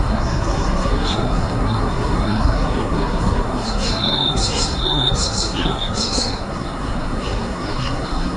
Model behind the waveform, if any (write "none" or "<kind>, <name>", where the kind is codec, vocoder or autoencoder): codec, SNAC